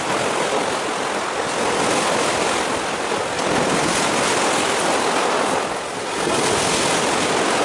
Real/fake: real